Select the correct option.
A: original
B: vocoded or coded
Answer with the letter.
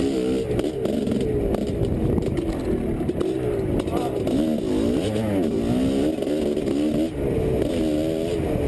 A